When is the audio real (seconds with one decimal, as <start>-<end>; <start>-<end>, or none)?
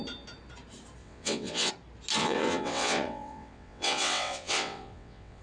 0.0-1.0; 1.7-2.2